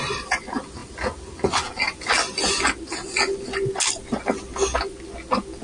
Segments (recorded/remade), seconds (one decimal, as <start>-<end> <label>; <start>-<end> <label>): 0.0-5.6 recorded